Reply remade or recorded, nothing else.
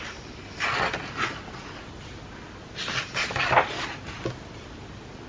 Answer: recorded